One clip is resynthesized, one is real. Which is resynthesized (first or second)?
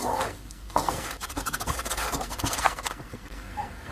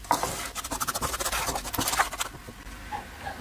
first